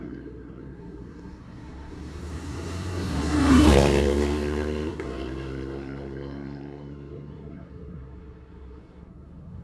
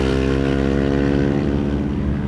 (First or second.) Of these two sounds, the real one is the second